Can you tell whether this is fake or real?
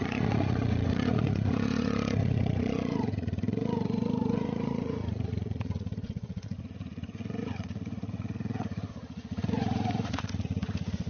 fake